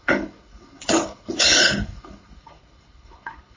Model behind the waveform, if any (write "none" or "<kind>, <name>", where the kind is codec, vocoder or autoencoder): codec, HILCodec